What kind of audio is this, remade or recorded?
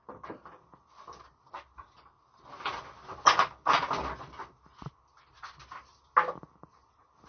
recorded